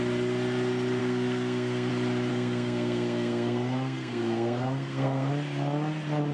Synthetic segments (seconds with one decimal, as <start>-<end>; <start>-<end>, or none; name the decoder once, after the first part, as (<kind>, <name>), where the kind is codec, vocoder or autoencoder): 1.0-1.9 (codec, SNAC); 2.3-5.3